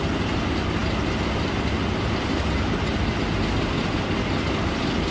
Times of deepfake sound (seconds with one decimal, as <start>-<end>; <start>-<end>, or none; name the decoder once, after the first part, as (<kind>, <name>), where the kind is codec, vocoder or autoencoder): none